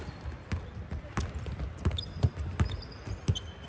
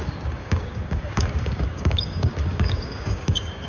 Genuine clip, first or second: first